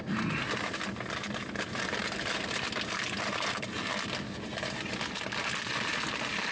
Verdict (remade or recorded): recorded